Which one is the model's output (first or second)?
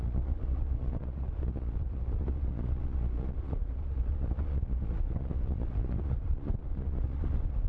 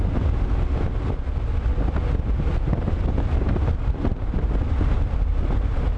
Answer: first